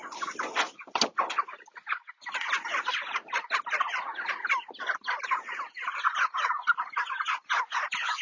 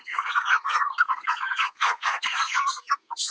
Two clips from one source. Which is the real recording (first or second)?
first